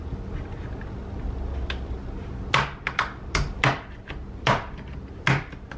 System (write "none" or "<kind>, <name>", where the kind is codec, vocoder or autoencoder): none